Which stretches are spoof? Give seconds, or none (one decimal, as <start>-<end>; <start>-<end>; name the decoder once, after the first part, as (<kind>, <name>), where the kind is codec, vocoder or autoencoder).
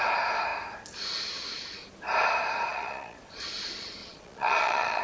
2.7-3.4 (vocoder, Vocos); 4.0-5.0